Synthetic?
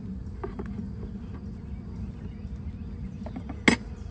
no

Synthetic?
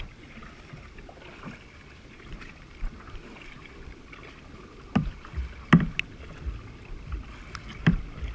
no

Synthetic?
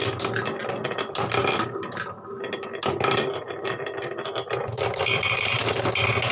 no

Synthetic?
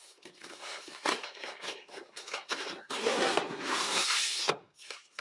yes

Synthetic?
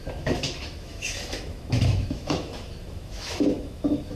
yes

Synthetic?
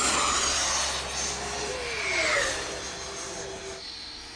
no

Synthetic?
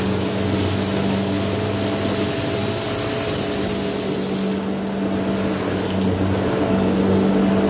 no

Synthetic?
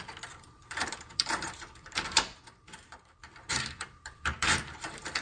yes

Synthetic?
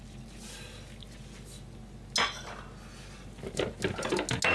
no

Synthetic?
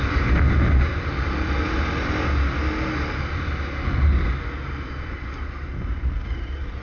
no